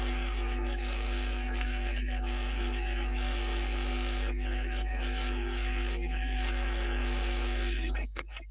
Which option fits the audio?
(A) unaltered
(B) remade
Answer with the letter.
B